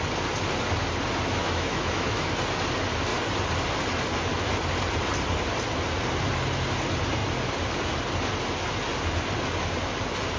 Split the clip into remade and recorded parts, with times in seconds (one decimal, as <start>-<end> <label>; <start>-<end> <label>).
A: 0.0-1.4 recorded; 1.4-2.3 remade; 2.3-10.4 recorded